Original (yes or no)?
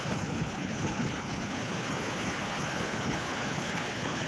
no